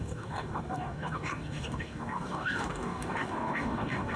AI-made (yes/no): yes